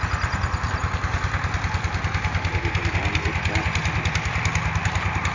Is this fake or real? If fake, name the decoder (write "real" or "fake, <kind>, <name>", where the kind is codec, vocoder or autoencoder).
real